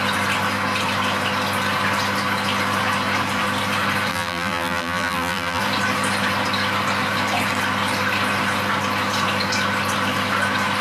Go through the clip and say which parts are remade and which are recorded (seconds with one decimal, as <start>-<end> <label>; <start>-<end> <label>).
0.0-4.1 recorded; 4.1-5.6 remade; 5.6-10.8 recorded